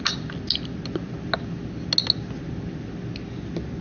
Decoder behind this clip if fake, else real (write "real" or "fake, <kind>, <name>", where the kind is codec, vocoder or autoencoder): real